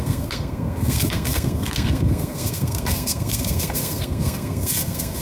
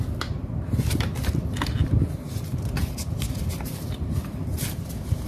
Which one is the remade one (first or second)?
first